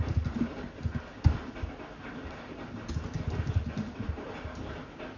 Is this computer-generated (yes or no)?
no